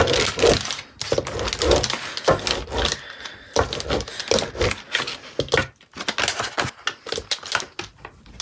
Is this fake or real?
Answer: real